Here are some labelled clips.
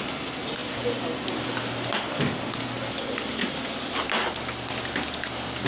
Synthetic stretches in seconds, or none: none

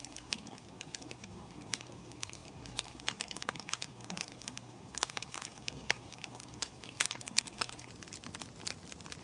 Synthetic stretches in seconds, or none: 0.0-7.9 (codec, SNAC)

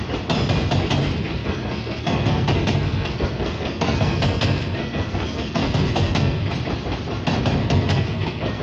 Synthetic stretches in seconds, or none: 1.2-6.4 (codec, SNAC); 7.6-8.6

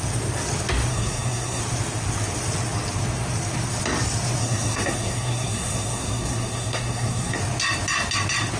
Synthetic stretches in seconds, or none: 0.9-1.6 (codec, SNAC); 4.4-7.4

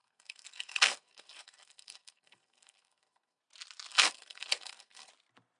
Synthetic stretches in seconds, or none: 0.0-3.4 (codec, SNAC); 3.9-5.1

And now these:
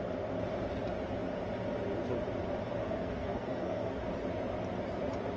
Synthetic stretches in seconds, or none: 2.8-4.0 (codec, SNAC)

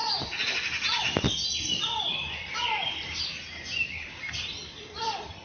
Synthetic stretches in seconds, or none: none

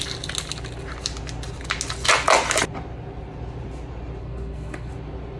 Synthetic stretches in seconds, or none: 4.2-4.9 (codec, SNAC)